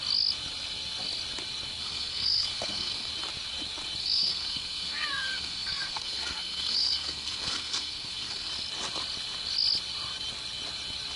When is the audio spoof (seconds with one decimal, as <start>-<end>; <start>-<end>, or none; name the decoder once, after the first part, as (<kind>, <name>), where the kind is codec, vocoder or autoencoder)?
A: 1.8-3.1 (codec, SNAC); 4.0-8.5